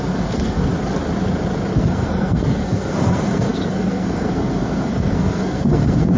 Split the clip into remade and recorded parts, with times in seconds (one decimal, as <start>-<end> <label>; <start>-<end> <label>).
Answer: 0.0-0.7 remade; 0.7-1.7 recorded; 1.7-6.2 remade